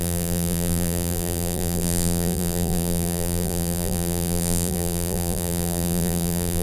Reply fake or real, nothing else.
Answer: fake